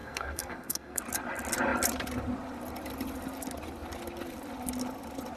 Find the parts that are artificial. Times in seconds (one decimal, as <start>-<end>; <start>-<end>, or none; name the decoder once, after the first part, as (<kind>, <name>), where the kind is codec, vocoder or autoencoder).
0.0-1.0 (codec, SNAC)